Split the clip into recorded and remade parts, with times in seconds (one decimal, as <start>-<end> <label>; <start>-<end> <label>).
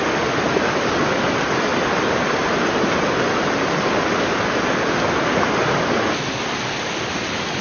0.0-7.6 recorded